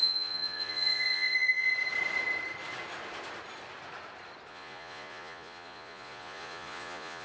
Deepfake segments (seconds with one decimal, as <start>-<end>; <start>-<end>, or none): 0.0-1.7; 4.5-7.2